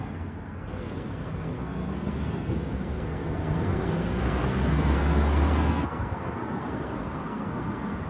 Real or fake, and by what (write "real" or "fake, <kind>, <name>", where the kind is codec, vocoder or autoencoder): fake, codec, SNAC